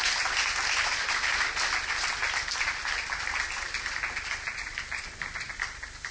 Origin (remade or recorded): recorded